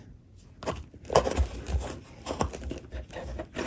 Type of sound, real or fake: real